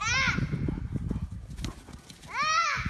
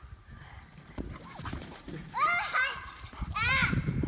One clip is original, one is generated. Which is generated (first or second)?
second